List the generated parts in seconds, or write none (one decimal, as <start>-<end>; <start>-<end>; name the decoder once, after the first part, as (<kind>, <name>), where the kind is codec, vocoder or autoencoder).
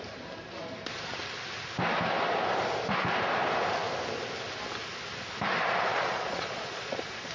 5.9-7.3 (vocoder, Vocos)